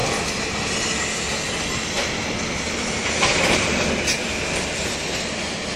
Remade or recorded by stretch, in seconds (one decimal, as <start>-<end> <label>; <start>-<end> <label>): 0.0-2.0 recorded; 2.0-3.6 remade; 3.6-5.8 recorded

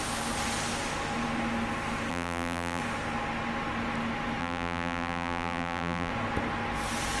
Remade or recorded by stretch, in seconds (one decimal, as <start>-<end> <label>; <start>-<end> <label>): 0.0-2.1 recorded; 2.1-2.8 remade; 2.8-4.4 recorded; 4.4-6.1 remade; 6.1-7.2 recorded